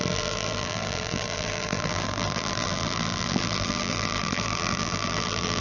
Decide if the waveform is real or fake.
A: fake